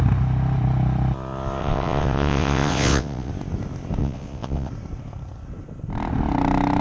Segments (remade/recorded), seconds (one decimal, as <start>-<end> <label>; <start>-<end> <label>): 0.0-1.6 recorded; 1.6-3.3 remade; 3.3-4.0 recorded; 4.0-4.7 remade; 4.7-6.8 recorded